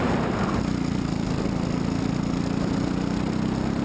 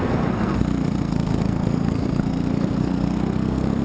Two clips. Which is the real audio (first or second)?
first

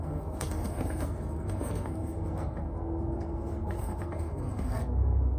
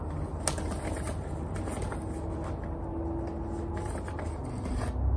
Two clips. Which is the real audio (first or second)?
second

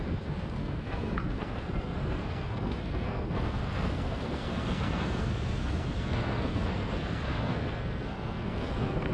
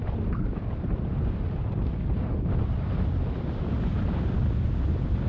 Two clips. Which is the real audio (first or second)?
second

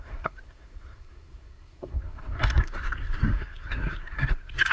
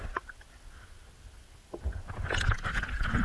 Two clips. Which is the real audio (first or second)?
second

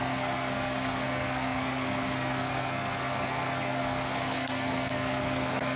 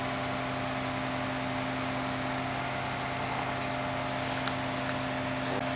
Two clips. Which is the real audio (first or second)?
second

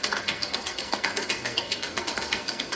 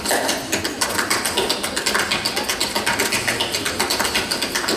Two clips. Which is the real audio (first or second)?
second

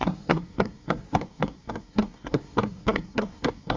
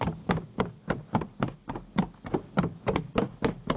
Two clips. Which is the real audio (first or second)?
second